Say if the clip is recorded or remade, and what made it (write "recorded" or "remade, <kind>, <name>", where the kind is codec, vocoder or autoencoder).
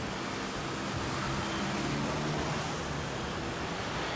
recorded